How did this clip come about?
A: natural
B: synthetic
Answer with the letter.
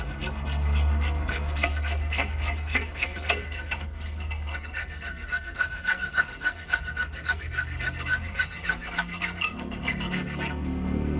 B